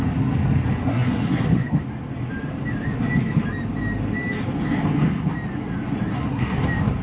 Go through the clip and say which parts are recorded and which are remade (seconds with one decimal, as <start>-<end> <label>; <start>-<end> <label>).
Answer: 0.0-0.8 recorded; 0.8-1.8 remade; 1.8-6.1 recorded; 6.1-6.6 remade; 6.6-7.0 recorded